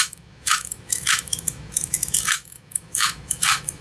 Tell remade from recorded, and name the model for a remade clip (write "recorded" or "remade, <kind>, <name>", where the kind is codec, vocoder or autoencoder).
remade, autoencoder, DAC-VAE